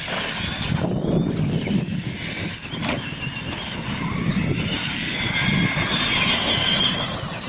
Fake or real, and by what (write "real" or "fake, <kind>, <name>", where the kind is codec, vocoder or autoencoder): real